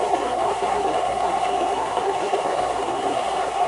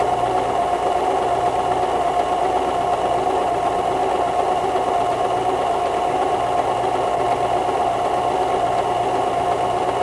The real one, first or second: second